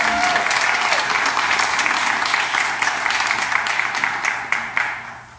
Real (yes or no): yes